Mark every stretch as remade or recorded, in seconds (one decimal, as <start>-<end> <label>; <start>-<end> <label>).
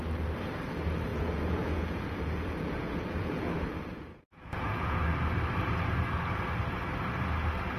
0.0-1.1 recorded; 1.1-5.0 remade; 5.0-7.8 recorded